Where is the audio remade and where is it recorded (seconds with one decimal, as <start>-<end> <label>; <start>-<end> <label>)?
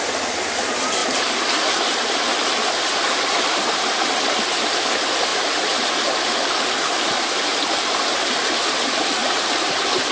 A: 0.0-1.0 recorded; 1.0-2.1 remade; 2.1-5.3 recorded; 5.3-5.8 remade; 5.8-7.5 recorded; 7.5-8.2 remade; 8.2-9.2 recorded; 9.2-10.1 remade